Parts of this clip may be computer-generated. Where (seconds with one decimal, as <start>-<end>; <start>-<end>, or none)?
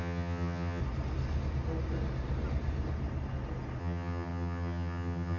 0.0-0.8; 3.8-5.4